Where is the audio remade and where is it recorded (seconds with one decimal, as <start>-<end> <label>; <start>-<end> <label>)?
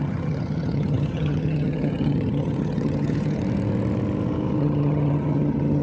0.0-3.4 remade; 3.4-4.6 recorded; 4.6-5.8 remade